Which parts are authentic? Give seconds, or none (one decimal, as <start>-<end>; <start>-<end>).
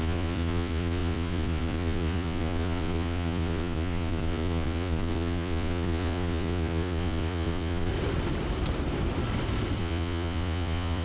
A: 7.9-9.8